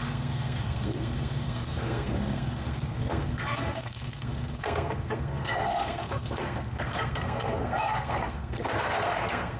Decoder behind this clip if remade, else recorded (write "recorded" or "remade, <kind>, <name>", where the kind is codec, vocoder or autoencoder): remade, codec, SNAC